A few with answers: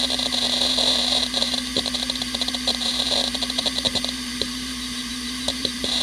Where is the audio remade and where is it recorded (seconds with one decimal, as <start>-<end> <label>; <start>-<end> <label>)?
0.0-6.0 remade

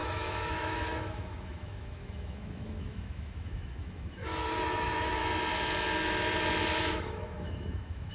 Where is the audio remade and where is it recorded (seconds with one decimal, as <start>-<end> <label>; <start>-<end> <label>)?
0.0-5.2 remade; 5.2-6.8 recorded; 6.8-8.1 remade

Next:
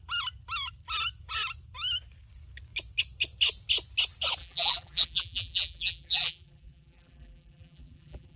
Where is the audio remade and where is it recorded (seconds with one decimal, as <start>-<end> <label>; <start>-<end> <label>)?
0.0-4.4 recorded; 4.4-8.4 remade

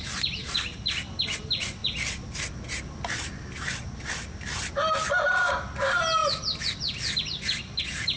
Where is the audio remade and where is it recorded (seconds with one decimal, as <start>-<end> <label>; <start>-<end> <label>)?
0.0-8.2 recorded

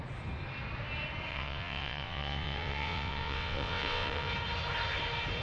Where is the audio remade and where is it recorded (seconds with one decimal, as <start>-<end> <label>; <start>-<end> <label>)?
0.0-1.3 recorded; 1.3-4.3 remade; 4.3-5.4 recorded